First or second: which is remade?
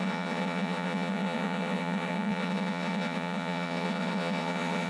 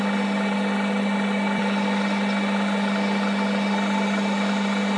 first